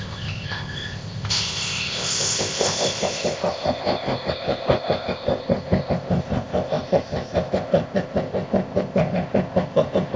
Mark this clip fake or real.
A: fake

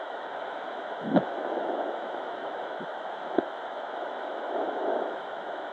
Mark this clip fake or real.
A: fake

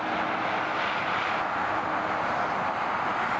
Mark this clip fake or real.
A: real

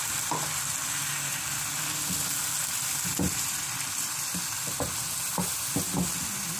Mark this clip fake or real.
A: real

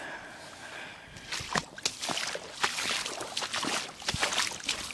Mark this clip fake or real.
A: real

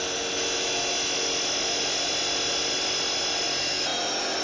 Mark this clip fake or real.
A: real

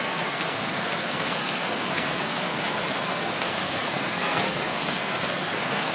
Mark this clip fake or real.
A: fake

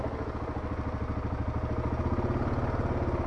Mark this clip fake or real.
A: real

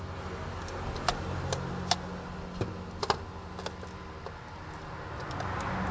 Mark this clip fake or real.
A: real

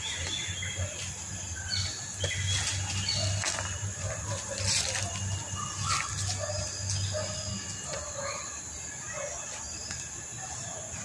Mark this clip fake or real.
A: real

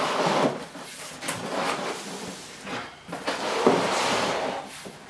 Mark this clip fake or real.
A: real